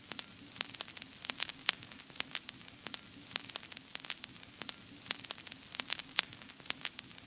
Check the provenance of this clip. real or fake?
real